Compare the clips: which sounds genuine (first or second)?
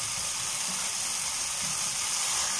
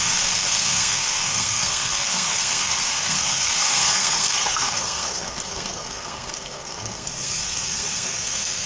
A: first